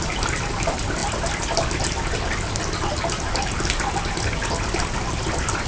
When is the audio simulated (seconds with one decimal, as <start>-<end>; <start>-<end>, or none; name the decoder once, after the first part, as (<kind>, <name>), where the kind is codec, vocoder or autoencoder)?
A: none